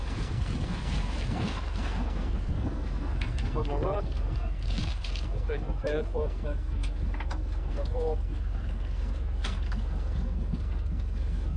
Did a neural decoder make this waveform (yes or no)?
yes